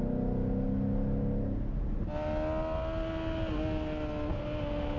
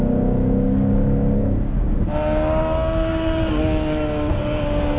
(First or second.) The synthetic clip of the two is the second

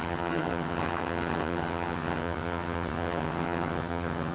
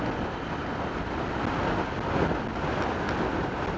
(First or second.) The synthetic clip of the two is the first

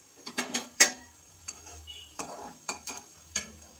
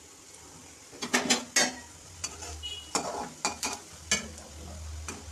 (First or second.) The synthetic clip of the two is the first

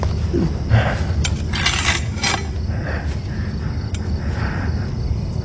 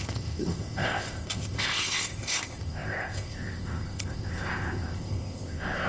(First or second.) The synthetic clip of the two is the second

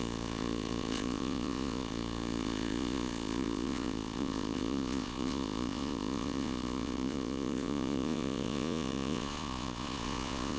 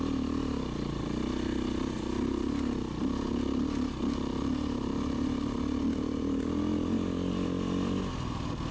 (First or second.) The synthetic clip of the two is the first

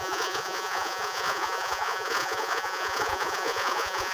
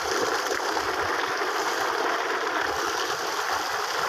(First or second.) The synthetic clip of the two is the first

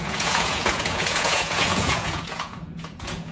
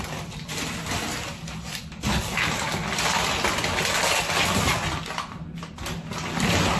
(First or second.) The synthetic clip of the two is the first